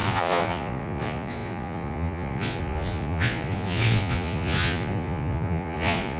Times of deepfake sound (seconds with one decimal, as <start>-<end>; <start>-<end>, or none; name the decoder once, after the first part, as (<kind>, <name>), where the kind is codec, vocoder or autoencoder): 0.0-6.2 (vocoder, Vocos)